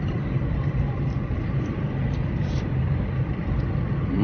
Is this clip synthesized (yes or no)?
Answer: yes